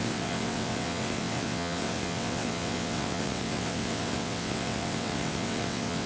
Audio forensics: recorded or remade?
remade